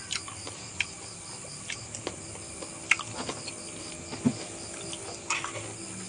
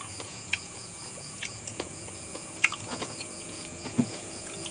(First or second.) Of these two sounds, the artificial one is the second